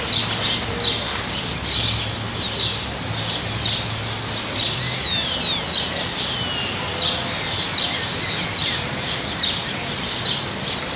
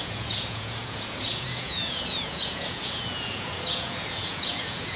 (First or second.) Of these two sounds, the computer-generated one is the second